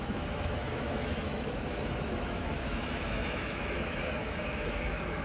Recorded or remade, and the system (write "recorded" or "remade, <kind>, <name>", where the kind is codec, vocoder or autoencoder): remade, autoencoder, DAC-VAE